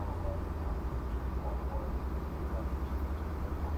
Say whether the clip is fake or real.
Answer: real